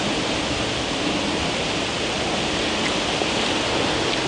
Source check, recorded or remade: recorded